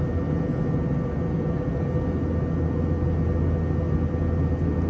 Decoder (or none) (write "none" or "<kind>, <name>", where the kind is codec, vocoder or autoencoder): none